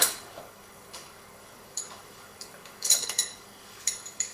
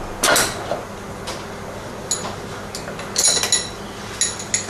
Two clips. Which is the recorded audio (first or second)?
second